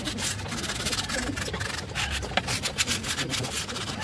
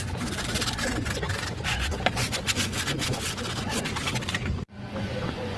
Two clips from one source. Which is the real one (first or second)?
first